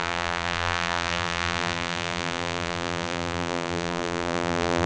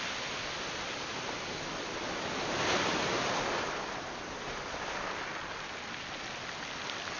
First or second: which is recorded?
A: second